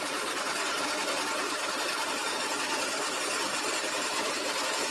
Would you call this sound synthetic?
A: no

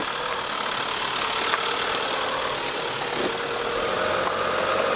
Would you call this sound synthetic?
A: no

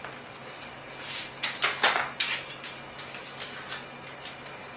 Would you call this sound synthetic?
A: no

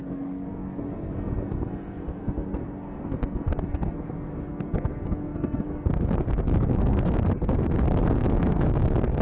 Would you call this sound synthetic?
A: yes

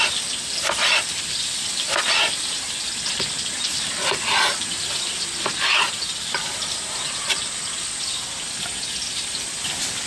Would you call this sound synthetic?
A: no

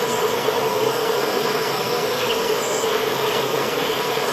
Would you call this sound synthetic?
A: yes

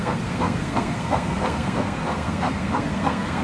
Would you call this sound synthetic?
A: yes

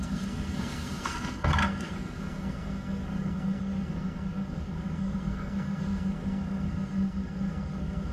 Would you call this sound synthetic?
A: yes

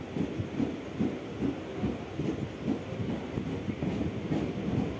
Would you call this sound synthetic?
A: no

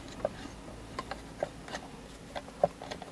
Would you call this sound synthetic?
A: no